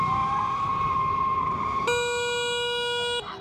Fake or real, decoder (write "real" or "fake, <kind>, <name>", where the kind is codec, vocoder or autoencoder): real